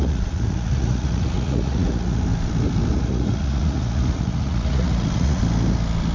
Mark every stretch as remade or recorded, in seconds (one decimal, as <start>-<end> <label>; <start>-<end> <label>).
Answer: 0.0-2.2 remade; 2.2-2.9 recorded; 2.9-5.4 remade; 5.4-6.1 recorded